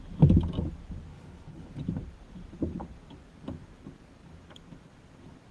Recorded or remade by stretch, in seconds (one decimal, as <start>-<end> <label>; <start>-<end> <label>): 0.0-1.1 recorded; 1.1-1.7 remade; 1.7-5.5 recorded